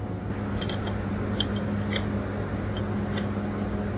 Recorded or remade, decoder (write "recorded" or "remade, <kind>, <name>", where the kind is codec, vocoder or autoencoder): recorded